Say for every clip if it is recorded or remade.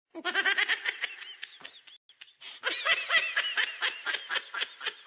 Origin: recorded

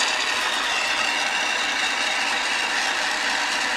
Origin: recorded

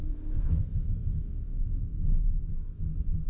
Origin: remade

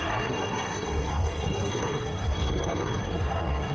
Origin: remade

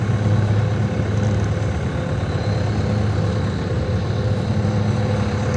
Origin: recorded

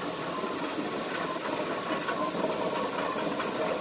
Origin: recorded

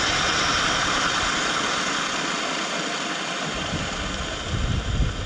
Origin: recorded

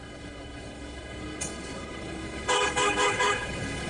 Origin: remade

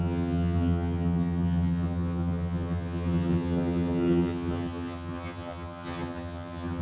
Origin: remade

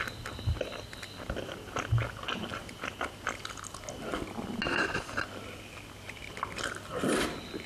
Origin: recorded